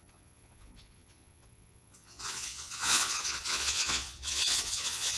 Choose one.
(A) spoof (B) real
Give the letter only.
A